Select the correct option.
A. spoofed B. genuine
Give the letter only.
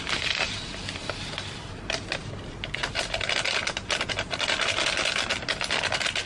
B